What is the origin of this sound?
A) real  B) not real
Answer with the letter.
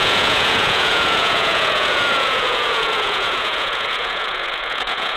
B